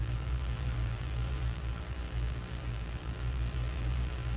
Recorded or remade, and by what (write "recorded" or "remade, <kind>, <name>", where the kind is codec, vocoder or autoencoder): remade, vocoder, BigVGAN v2